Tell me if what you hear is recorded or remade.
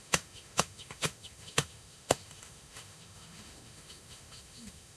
remade